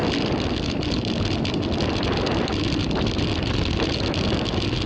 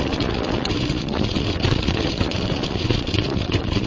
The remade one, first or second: second